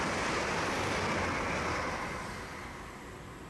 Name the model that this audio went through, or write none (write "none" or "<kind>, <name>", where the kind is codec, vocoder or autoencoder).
none